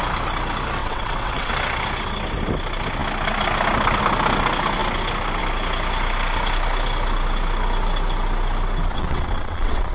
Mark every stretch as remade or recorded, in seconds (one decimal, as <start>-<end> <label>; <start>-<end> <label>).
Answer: 0.0-0.8 recorded; 0.8-1.5 remade; 1.5-8.9 recorded; 8.9-9.9 remade